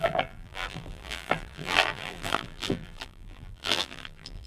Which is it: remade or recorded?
remade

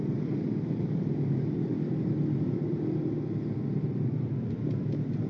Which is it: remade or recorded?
remade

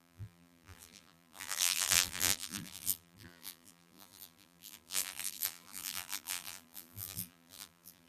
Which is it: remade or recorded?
remade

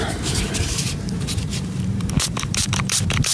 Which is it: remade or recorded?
remade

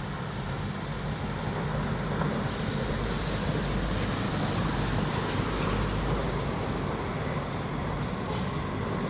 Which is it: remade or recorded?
recorded